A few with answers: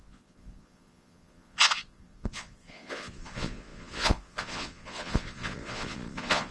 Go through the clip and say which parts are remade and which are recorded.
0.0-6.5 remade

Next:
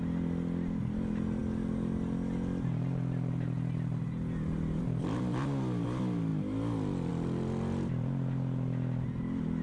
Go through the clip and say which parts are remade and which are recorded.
0.0-9.6 recorded